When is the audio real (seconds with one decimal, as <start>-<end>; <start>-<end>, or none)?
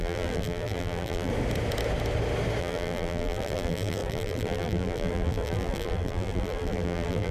1.3-2.6